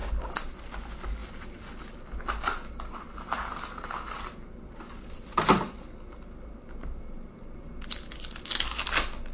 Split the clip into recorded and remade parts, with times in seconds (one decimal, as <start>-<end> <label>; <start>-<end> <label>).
0.0-9.3 recorded